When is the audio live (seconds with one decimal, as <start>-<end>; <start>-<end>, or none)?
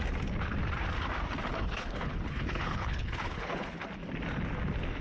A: 0.0-1.5; 3.8-5.0